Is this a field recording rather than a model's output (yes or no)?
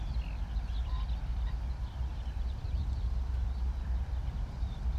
no